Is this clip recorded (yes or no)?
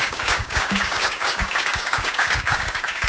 no